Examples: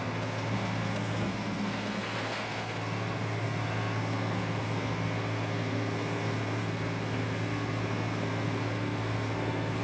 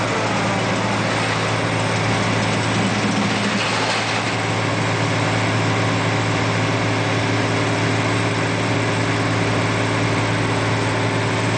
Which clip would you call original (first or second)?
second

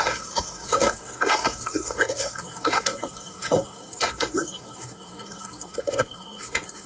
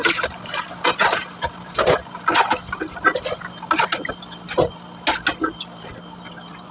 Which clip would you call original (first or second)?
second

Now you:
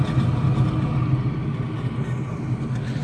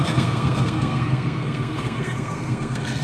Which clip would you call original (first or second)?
first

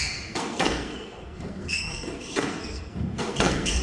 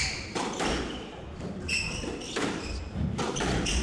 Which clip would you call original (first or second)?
second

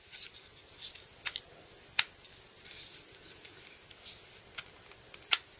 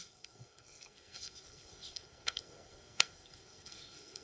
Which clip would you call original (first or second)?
first